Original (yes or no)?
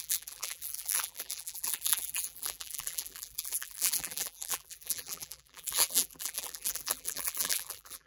no